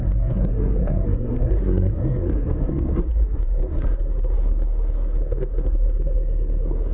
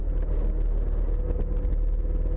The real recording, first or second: second